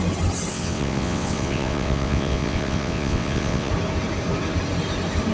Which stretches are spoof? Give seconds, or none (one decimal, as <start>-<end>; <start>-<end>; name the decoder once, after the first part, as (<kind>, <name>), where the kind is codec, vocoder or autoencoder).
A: 0.5-3.7 (vocoder, WaveNeXt)